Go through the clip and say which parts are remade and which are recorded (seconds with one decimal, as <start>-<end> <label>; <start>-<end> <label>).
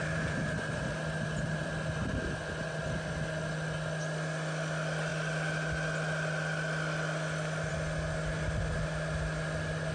0.0-0.6 remade; 0.6-9.9 recorded